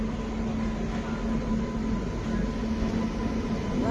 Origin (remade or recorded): recorded